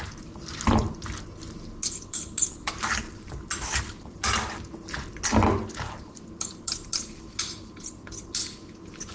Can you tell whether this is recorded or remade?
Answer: recorded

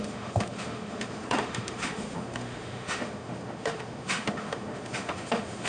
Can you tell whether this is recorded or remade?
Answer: remade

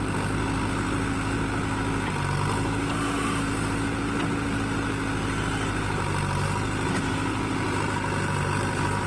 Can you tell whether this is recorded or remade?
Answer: recorded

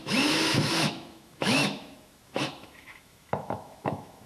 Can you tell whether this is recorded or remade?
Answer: remade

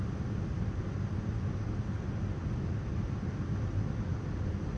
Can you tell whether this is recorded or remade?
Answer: recorded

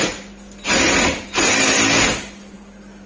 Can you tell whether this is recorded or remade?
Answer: recorded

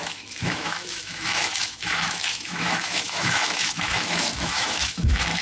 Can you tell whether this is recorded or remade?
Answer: remade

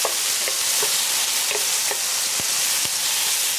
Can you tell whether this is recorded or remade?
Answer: recorded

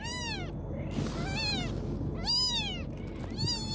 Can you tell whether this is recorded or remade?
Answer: recorded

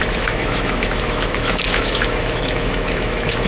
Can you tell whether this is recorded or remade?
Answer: remade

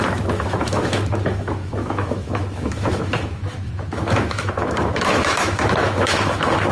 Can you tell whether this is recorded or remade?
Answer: remade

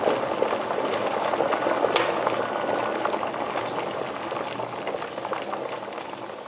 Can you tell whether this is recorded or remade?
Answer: recorded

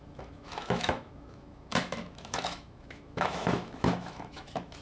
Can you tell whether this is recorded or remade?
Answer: remade